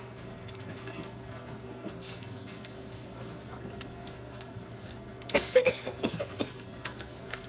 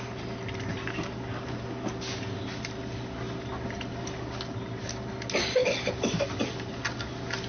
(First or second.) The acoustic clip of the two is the second